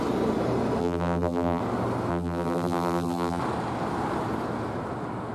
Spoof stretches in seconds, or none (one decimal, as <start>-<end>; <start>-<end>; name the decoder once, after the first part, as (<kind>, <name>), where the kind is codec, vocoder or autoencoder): 0.8-1.6 (vocoder, BigVGAN v2); 2.1-3.4